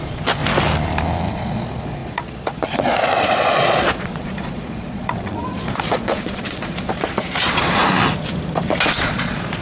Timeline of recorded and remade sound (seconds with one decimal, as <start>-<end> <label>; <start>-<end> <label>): 0.0-0.4 remade; 0.4-1.3 recorded; 1.3-7.8 remade; 7.8-9.0 recorded; 9.0-9.6 remade